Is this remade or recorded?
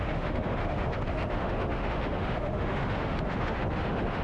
remade